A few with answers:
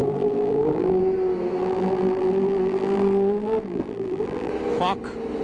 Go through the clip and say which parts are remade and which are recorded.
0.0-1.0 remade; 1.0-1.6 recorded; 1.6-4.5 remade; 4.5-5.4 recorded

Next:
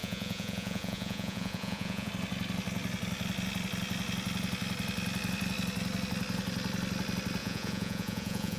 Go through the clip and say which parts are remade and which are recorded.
0.0-2.1 remade; 2.1-7.4 recorded; 7.4-8.6 remade

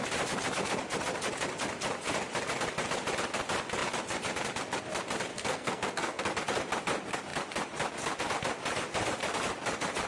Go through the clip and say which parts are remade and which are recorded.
0.0-5.3 recorded; 5.3-6.2 remade; 6.2-10.1 recorded

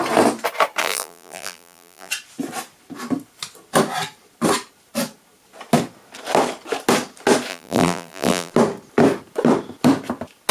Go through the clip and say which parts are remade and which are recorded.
0.0-0.8 recorded; 0.8-2.1 remade; 2.1-7.5 recorded; 7.5-8.5 remade; 8.5-10.5 recorded

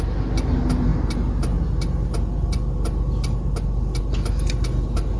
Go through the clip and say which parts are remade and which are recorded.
0.0-5.2 recorded